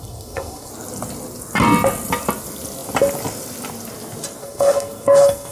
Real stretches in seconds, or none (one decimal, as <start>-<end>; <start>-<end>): 0.7-4.4